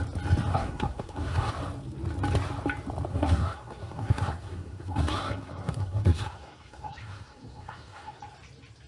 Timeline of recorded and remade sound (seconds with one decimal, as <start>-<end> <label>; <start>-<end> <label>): 0.0-0.5 recorded; 0.5-1.5 remade; 1.5-3.1 recorded; 3.1-8.2 remade; 8.2-8.9 recorded